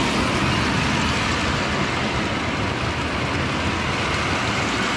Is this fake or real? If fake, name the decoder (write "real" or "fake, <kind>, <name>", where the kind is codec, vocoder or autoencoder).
real